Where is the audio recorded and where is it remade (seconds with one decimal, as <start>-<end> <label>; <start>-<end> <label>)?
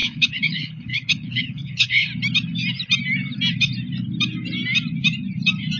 0.0-2.1 remade; 2.1-5.8 recorded